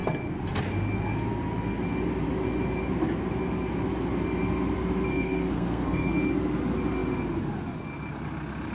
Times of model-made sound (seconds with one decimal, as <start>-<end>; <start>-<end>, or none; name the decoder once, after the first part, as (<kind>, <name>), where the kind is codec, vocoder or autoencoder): 5.1-6.1 (codec, SNAC)